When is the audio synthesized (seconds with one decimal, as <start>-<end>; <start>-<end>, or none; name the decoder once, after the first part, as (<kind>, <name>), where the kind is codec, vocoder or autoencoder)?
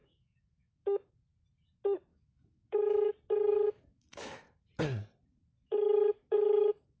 0.0-1.1 (autoencoder, DAC-VAE); 2.1-3.1; 3.5-4.4; 5.6-7.0